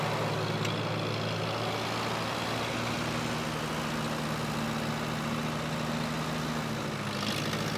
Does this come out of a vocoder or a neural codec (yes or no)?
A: no